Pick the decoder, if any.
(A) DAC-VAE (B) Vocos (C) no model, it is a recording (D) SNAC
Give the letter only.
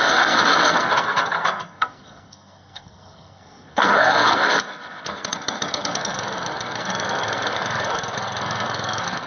D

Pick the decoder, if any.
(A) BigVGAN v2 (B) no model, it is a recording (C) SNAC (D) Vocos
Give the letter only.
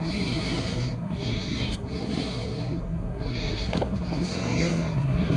C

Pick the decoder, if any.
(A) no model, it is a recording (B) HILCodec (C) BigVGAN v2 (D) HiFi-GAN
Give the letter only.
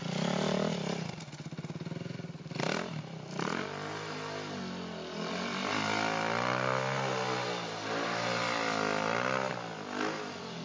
A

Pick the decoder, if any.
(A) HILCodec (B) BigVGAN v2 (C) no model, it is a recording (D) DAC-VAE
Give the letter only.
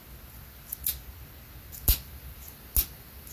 C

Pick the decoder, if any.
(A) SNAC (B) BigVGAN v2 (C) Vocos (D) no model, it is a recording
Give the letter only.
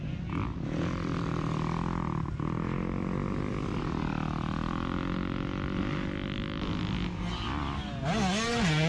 D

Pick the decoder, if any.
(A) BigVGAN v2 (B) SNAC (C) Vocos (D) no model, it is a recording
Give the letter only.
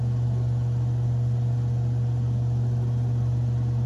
D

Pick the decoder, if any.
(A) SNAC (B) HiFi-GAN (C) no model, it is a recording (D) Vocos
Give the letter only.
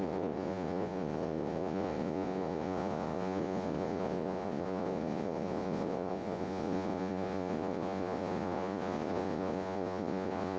D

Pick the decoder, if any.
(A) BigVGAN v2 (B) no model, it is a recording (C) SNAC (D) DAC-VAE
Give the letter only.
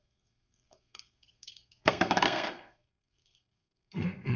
C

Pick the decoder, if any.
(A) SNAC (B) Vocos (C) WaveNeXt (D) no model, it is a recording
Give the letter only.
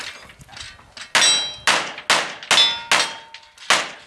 D